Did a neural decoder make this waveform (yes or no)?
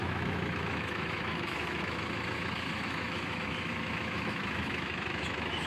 yes